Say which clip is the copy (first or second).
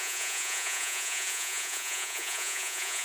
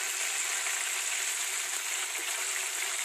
first